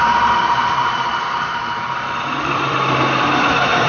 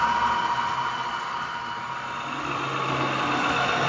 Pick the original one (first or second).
second